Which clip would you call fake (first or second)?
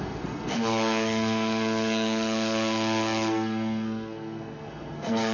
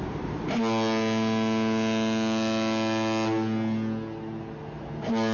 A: first